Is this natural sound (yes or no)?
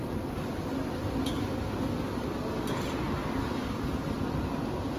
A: yes